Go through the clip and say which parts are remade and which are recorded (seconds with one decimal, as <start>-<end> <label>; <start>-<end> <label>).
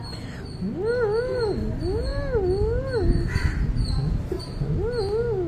0.0-5.5 recorded